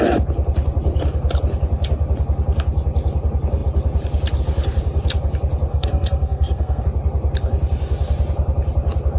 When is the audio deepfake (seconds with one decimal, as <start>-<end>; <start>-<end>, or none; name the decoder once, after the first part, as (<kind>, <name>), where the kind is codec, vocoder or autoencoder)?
5.7-6.8 (codec, SNAC)